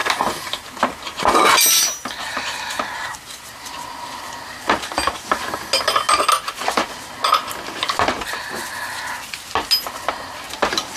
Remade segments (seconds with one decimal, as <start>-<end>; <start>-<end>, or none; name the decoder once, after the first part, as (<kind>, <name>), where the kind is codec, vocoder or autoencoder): none

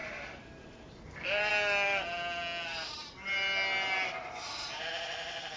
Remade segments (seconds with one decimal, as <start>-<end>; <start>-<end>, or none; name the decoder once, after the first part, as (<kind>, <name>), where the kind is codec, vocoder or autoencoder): 0.6-1.5 (vocoder, BigVGAN v2); 4.9-5.6

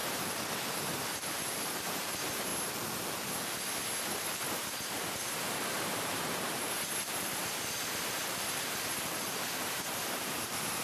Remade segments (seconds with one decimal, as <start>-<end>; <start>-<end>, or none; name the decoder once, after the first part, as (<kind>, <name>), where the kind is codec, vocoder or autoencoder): 0.0-2.5 (vocoder, BigVGAN v2); 4.0-10.8

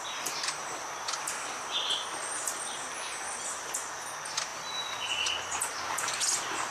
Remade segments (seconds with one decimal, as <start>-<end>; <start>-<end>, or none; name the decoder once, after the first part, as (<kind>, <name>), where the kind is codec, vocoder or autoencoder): none